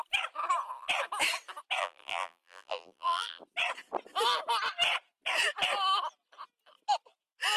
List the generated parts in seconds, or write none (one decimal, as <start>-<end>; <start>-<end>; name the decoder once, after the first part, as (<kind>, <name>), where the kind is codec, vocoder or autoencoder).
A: 1.8-3.4 (vocoder, BigVGAN v2)